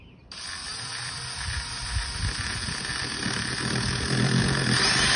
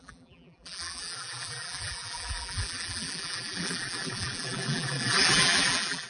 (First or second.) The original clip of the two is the first